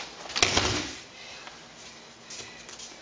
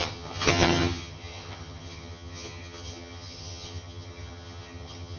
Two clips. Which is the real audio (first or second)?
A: first